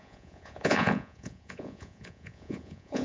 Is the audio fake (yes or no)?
yes